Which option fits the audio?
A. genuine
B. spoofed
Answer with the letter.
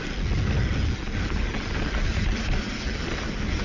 A